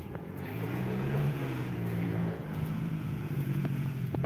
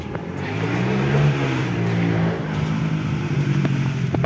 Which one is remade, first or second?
first